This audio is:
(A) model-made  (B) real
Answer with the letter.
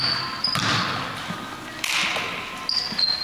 B